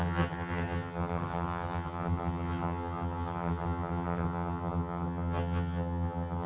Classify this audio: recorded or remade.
remade